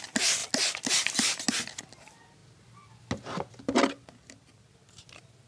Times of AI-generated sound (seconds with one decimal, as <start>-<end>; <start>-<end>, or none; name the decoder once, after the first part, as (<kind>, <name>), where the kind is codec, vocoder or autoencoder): none